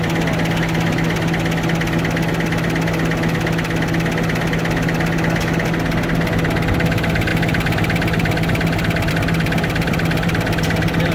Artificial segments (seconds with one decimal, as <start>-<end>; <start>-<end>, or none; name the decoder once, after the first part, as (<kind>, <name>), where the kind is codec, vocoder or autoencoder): none